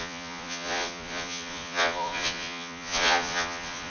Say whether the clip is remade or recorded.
remade